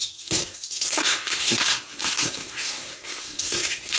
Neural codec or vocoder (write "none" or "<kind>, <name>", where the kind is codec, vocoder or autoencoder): codec, SNAC